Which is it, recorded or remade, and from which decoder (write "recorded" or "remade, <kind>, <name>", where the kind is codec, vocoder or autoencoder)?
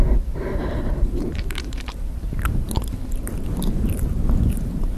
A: remade, vocoder, BigVGAN v2